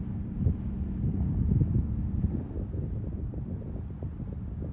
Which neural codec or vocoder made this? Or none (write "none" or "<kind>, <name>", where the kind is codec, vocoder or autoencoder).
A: none